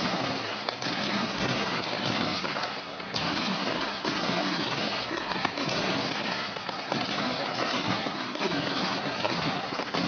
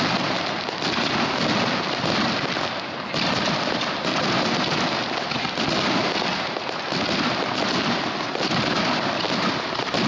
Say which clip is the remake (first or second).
first